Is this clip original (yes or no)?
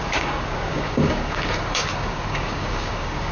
no